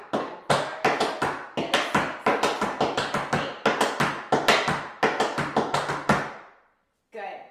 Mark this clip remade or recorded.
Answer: recorded